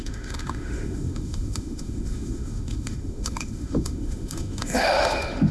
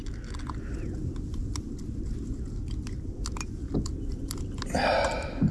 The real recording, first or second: second